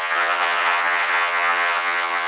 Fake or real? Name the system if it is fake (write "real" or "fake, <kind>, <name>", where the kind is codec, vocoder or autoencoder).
fake, vocoder, HiFi-GAN